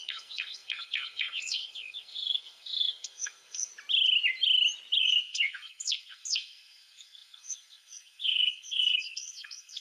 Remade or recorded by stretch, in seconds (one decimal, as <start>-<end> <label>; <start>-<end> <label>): 0.0-3.7 remade; 3.7-5.0 recorded; 5.0-9.8 remade